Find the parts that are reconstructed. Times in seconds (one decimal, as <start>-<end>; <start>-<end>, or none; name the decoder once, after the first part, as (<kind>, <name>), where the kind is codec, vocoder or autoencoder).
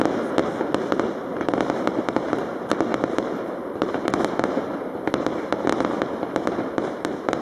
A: 1.3-2.4 (vocoder, BigVGAN v2); 2.9-7.4